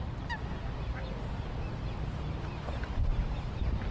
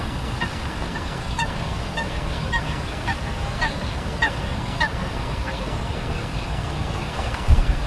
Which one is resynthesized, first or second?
second